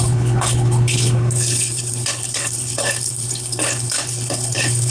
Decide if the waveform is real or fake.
fake